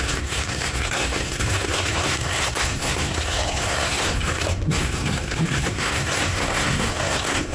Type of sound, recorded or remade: remade